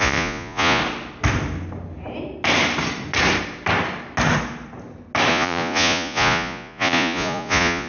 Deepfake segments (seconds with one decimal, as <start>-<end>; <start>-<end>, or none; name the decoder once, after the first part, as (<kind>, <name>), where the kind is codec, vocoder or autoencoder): 0.0-0.8 (vocoder, Vocos); 5.3-7.9